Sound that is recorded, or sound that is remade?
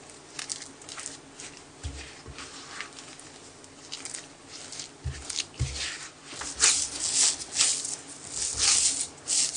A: recorded